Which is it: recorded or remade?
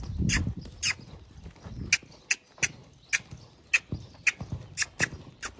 recorded